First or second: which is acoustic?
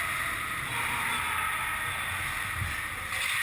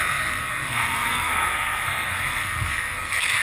first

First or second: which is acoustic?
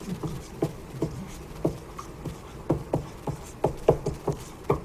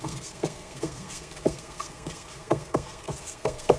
first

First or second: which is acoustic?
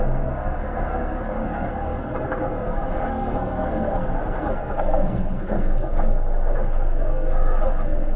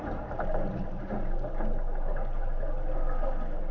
second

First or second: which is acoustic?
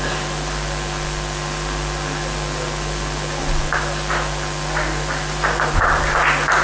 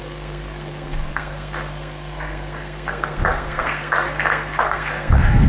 first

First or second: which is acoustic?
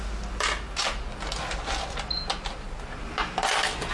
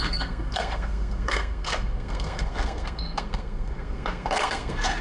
first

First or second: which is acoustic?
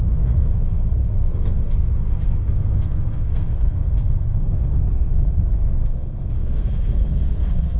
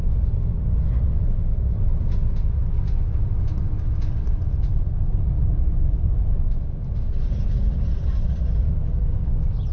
second